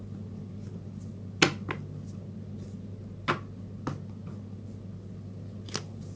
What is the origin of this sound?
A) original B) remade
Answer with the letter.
A